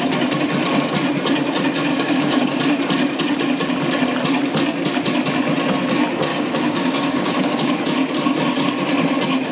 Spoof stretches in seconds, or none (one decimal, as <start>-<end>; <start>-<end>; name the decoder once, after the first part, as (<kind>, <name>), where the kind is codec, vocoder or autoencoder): 1.9-2.6 (codec, DAC); 6.3-7.8